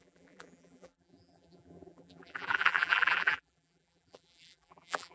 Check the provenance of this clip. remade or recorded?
remade